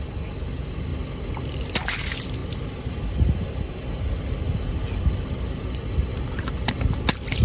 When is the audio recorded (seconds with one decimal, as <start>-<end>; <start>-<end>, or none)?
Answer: 0.0-7.4